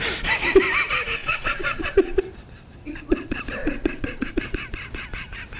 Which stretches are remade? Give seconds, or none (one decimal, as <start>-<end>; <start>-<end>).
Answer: 1.2-2.2; 3.6-4.3